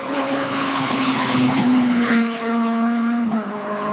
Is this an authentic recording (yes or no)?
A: no